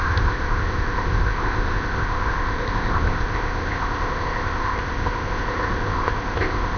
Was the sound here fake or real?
fake